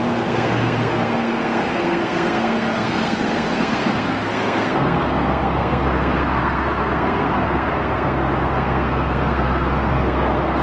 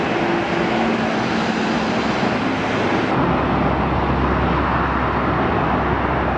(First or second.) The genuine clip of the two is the second